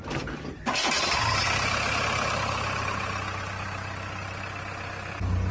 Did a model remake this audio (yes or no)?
no